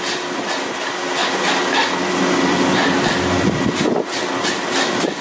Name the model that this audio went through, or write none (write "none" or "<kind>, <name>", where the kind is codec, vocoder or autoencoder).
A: none